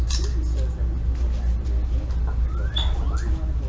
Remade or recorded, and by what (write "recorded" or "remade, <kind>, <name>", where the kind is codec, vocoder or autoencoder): recorded